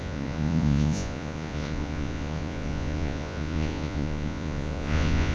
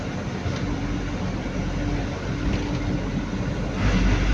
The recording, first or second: second